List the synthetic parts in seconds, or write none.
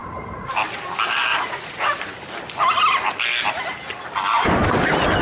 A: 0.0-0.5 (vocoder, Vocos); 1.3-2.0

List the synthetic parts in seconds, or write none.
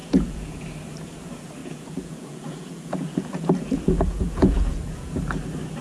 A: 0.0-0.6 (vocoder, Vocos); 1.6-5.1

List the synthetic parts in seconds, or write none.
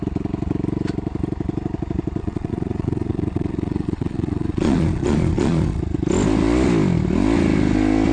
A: 2.2-5.8 (vocoder, Vocos)